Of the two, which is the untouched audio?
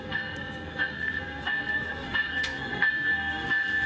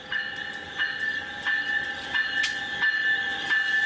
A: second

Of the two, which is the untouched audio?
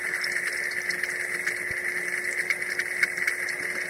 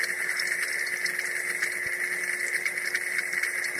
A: second